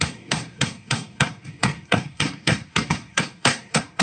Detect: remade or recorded remade